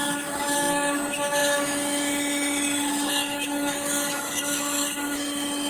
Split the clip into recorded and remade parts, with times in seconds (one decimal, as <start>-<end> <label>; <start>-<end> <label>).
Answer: 0.0-5.7 remade